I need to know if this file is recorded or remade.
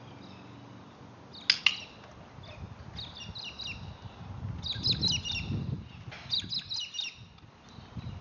recorded